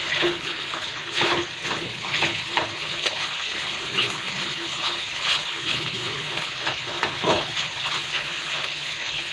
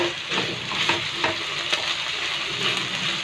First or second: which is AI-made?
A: first